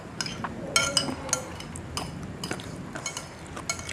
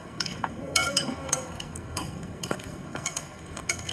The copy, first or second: second